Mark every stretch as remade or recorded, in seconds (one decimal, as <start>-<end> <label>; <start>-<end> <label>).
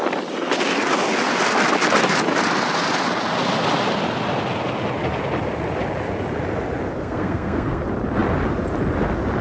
0.0-7.0 recorded; 7.0-7.8 remade; 7.8-9.4 recorded